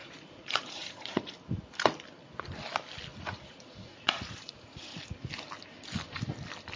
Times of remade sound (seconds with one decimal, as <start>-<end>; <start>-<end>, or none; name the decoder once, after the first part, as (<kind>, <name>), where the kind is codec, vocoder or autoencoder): 0.0-1.3 (vocoder, Vocos); 3.1-5.0